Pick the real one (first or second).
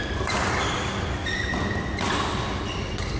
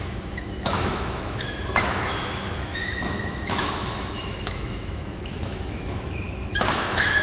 first